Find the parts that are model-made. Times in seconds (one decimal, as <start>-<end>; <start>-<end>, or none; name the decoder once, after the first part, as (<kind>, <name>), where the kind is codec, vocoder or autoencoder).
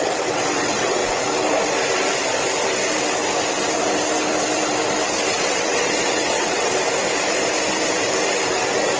0.0-1.0 (vocoder, WaveNeXt); 5.3-6.7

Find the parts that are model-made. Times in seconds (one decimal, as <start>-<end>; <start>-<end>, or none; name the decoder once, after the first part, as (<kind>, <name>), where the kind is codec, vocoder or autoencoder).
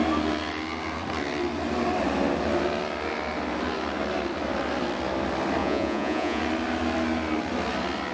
5.6-6.4 (vocoder, Vocos)